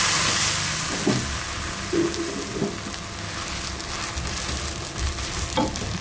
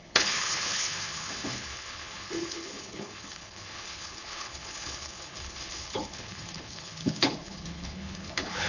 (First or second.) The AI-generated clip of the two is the second